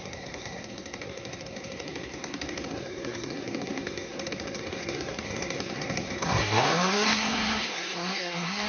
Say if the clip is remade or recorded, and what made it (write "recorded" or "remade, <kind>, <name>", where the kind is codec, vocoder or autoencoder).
remade, codec, SNAC